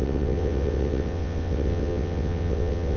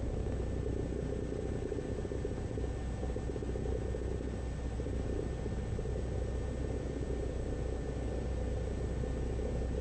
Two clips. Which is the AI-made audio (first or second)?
first